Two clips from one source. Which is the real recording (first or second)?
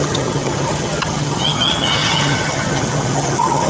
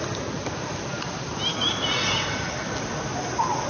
second